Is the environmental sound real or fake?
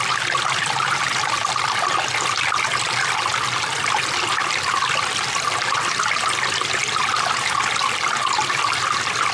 real